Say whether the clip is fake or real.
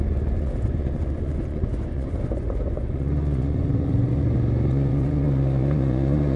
fake